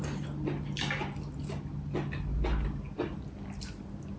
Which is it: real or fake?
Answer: real